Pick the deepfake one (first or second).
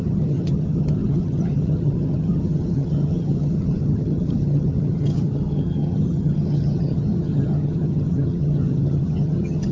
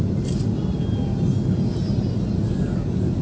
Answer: first